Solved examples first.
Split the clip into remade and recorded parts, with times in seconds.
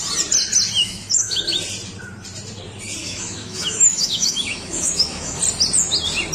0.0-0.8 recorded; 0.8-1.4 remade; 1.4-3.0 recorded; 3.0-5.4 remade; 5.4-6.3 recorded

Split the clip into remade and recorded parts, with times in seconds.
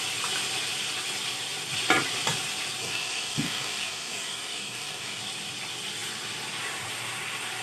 0.0-2.8 recorded; 2.8-5.2 remade; 5.2-7.6 recorded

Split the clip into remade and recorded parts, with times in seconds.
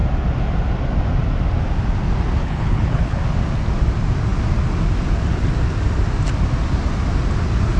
0.0-2.4 recorded; 2.4-3.2 remade; 3.2-7.8 recorded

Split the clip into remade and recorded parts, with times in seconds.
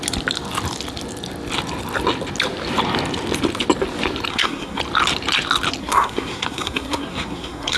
0.0-4.3 recorded; 4.3-4.8 remade; 4.8-5.8 recorded; 5.8-7.8 remade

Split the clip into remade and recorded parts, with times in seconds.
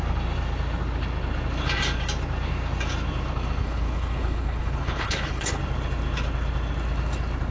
0.0-3.6 recorded; 3.6-5.6 remade; 5.6-7.5 recorded